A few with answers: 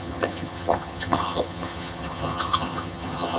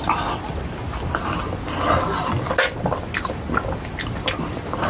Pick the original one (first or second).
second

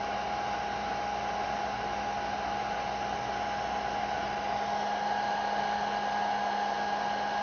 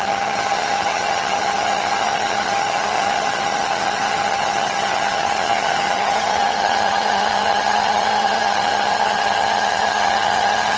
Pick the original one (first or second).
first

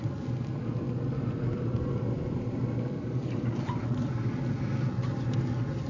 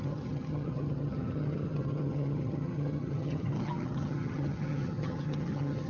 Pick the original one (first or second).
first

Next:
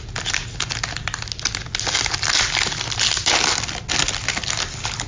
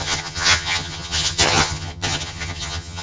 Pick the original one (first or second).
first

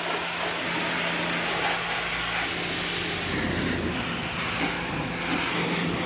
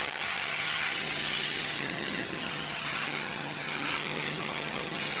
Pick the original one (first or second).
first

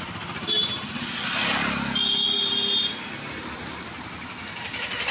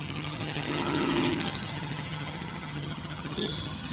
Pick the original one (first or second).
first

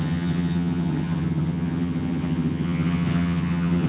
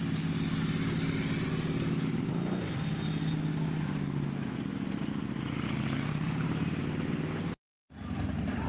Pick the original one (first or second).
second